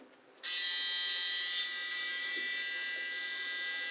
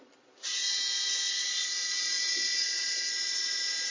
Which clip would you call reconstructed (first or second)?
second